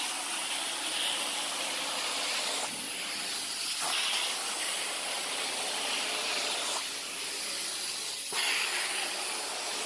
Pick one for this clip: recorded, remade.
recorded